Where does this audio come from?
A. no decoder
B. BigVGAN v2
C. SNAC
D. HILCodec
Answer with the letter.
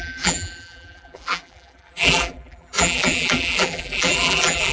B